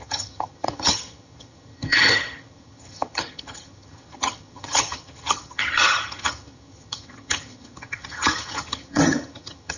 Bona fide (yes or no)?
no